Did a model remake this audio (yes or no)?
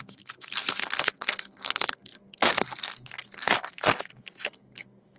yes